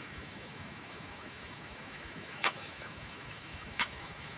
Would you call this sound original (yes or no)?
no